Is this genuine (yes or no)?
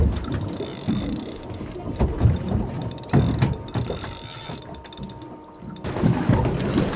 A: yes